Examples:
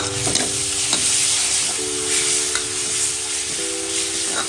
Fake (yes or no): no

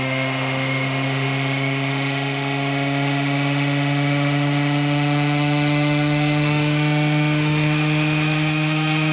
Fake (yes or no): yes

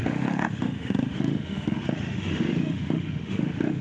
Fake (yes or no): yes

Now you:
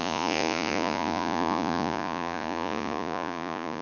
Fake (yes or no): yes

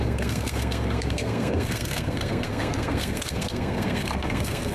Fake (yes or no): yes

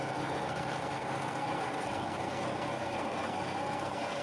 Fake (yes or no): yes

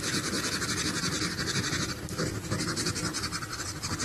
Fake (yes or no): no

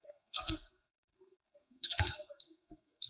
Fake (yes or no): yes